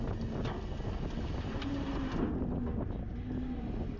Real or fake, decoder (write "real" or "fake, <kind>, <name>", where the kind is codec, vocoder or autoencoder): real